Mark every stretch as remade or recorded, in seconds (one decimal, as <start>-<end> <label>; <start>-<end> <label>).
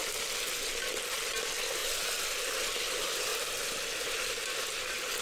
0.0-5.2 recorded